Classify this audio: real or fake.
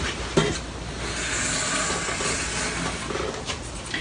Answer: real